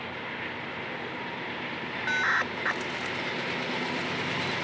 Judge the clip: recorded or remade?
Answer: recorded